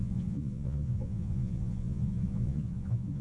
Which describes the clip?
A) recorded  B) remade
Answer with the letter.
B